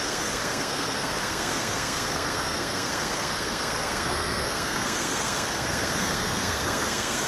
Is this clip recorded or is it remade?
remade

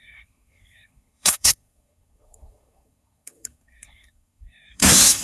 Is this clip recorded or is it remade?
remade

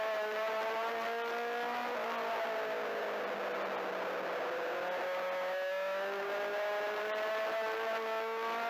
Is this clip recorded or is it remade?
recorded